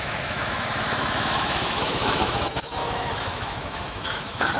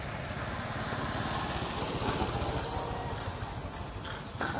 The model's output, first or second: first